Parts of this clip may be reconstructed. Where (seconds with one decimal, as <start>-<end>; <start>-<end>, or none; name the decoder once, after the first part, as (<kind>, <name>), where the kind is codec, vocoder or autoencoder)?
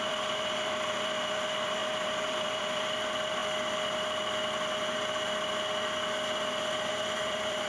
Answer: 0.0-3.4 (vocoder, BigVGAN v2); 6.9-7.7